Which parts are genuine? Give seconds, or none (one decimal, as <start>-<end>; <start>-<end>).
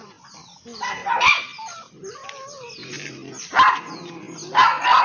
2.5-5.0